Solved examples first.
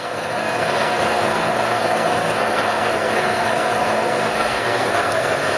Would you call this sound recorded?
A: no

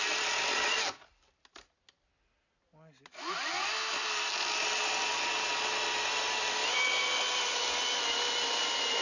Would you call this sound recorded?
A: yes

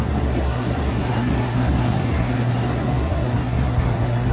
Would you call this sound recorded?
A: no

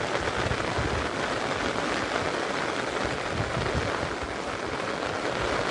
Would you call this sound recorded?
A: yes